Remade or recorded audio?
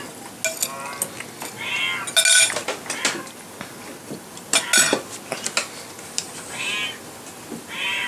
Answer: recorded